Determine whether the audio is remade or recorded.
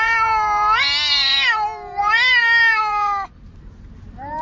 remade